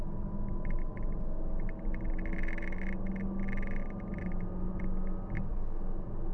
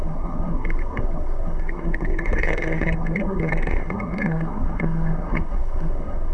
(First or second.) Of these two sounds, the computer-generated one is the second